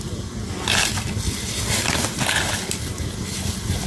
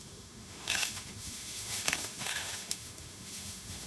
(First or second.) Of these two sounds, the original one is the first